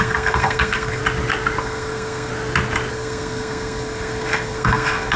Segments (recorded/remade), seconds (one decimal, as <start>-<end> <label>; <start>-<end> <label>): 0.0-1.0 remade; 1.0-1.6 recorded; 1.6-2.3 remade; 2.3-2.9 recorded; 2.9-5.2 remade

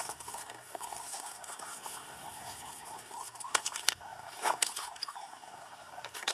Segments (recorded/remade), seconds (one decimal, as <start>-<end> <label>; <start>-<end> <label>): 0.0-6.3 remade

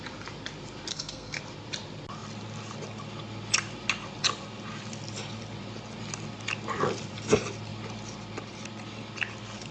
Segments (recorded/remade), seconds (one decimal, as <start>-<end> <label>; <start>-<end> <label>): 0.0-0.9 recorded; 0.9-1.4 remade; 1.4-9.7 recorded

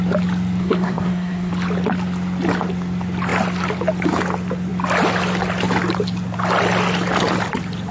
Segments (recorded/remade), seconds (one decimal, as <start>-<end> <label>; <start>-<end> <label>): 0.0-0.6 recorded; 0.6-1.5 remade; 1.5-7.9 recorded